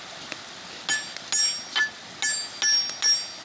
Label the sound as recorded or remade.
recorded